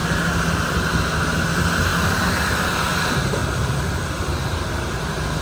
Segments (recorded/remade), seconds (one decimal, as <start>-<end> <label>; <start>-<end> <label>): 0.0-1.9 recorded; 1.9-2.7 remade; 2.7-5.4 recorded